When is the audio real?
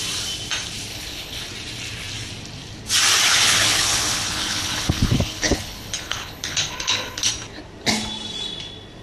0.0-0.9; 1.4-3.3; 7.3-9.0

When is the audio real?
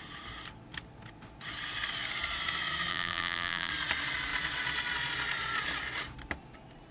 0.0-2.9; 3.7-6.9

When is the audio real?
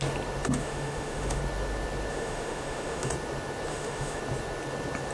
0.0-0.6; 1.4-2.1; 3.1-3.7; 4.2-5.1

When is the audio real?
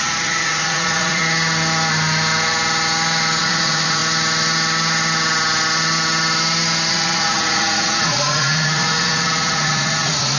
1.2-3.4; 4.0-6.9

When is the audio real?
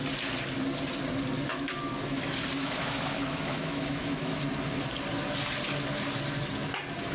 0.0-1.5; 2.2-2.6; 4.4-7.1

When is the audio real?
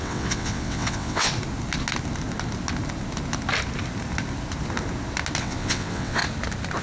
1.3-5.4; 6.2-6.8